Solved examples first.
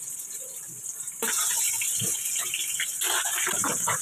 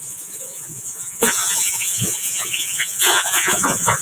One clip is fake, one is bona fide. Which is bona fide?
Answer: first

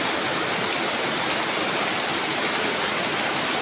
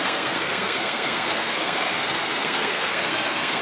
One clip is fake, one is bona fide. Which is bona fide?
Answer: first